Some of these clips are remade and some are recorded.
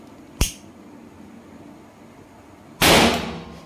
recorded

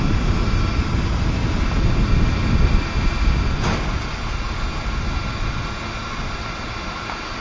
recorded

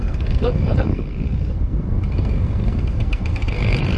remade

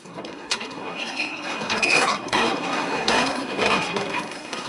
remade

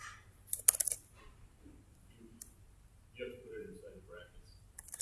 recorded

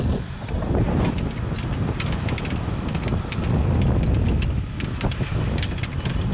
recorded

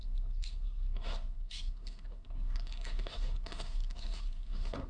remade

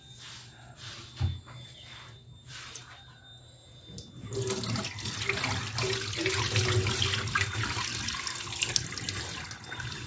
recorded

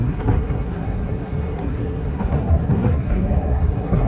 remade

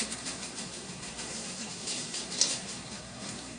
remade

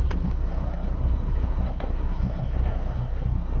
remade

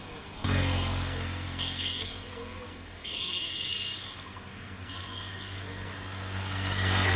remade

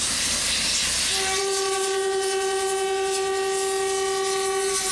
recorded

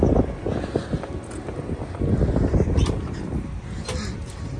recorded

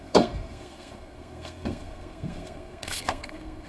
remade